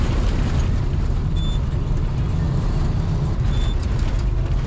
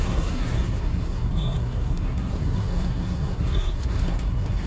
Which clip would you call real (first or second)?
first